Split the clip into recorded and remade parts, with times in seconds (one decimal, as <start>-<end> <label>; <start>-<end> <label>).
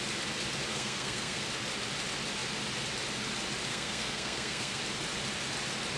0.0-0.7 recorded; 0.7-1.4 remade; 1.4-3.7 recorded; 3.7-4.8 remade; 4.8-6.0 recorded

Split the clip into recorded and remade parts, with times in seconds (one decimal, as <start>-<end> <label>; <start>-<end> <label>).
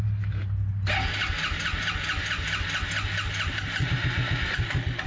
0.0-5.1 recorded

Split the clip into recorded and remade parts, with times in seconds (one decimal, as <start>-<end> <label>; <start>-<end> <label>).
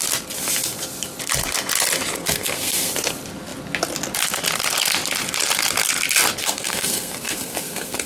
0.0-2.2 recorded; 2.2-2.9 remade; 2.9-6.4 recorded; 6.4-8.1 remade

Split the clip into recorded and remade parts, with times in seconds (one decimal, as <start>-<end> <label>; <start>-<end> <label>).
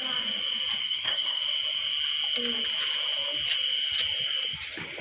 0.0-0.8 recorded; 0.8-1.4 remade; 1.4-5.0 recorded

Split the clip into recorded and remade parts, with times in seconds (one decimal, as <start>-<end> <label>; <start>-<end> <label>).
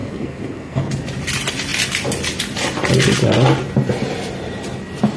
0.0-0.9 remade; 0.9-5.2 recorded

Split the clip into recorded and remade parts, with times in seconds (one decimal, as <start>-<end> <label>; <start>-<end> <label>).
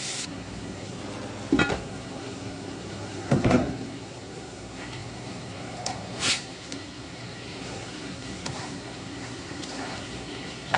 0.0-1.0 remade; 1.0-1.7 recorded; 1.7-10.8 remade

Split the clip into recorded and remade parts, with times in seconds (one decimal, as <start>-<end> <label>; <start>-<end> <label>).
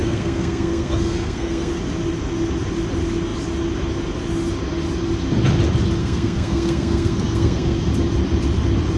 0.0-1.7 remade; 1.7-6.0 recorded; 6.0-7.9 remade; 7.9-9.0 recorded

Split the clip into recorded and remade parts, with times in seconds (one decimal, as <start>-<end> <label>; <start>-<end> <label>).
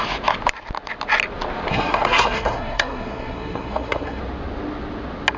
0.0-1.7 recorded; 1.7-4.2 remade; 4.2-5.4 recorded